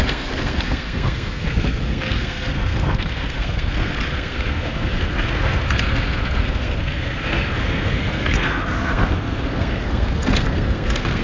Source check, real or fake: fake